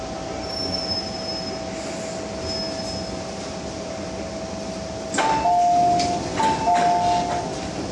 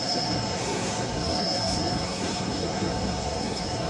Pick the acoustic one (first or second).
first